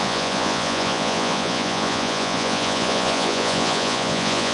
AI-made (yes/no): yes